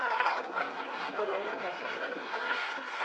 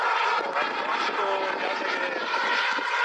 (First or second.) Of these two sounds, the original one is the second